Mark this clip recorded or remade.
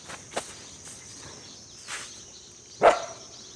recorded